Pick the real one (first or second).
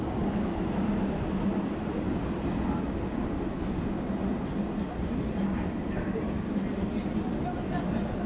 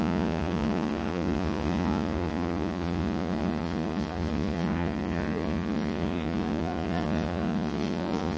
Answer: first